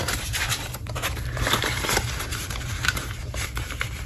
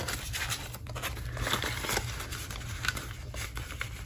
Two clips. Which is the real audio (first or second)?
second